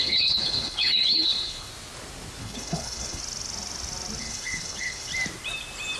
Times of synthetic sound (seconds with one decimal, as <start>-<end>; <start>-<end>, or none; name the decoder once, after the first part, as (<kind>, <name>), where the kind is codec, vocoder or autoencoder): 0.0-1.7 (codec, HILCodec); 2.4-3.2; 4.2-5.1